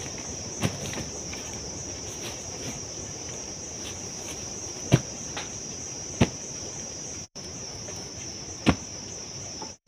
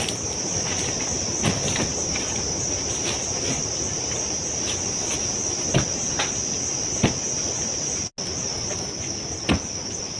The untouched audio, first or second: second